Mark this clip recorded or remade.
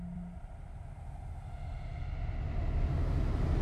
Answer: recorded